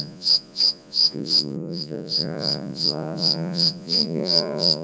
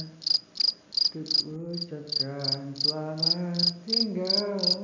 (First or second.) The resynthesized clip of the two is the first